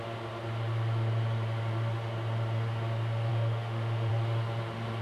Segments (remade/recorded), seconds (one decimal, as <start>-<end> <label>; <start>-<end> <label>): 0.0-3.3 recorded; 3.3-4.1 remade; 4.1-5.0 recorded